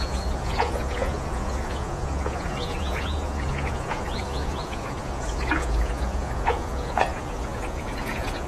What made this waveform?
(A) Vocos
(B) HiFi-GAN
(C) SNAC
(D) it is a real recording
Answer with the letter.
A